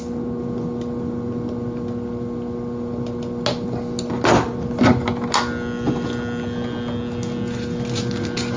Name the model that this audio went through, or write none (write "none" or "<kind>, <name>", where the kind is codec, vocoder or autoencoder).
none